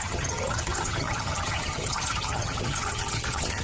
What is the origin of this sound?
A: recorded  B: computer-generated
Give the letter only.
B